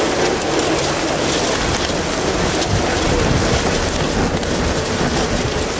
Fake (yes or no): no